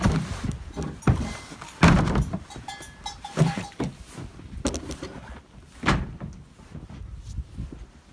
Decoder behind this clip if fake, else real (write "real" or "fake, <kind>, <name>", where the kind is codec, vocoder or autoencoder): real